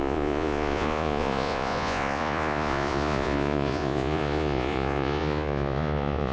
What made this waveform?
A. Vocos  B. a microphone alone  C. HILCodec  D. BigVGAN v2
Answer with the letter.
A